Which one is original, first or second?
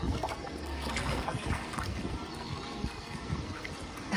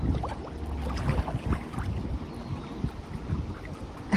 second